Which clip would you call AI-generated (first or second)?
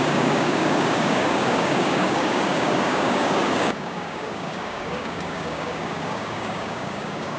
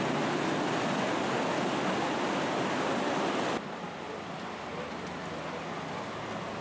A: first